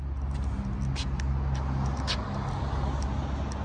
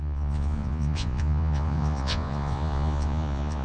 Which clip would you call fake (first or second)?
second